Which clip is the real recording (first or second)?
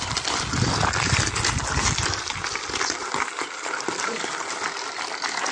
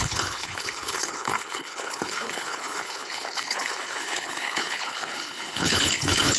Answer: first